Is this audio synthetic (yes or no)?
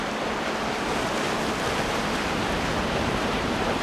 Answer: no